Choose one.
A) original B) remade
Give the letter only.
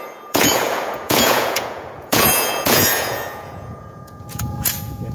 B